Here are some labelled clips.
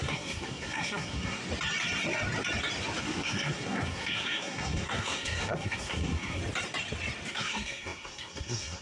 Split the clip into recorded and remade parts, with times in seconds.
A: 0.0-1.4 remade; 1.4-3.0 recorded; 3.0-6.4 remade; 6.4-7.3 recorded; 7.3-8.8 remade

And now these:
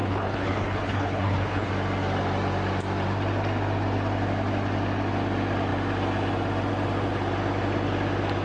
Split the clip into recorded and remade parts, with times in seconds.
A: 0.0-1.7 remade; 1.7-8.4 recorded